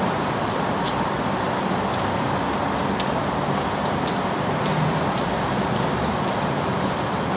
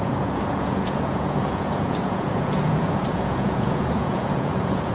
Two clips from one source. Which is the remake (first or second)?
second